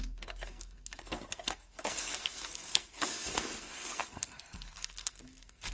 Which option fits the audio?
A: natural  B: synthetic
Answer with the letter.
B